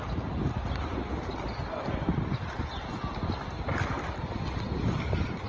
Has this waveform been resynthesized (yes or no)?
no